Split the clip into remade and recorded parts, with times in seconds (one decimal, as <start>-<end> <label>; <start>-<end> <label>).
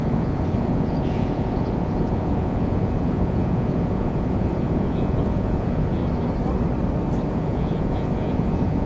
0.0-6.0 remade; 6.0-7.3 recorded; 7.3-8.9 remade